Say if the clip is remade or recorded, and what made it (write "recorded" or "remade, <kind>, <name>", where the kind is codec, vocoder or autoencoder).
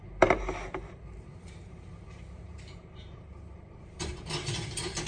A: remade, vocoder, BigVGAN v2